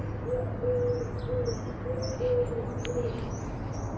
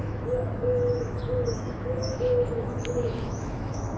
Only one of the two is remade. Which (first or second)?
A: second